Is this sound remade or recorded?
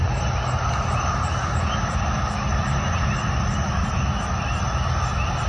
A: recorded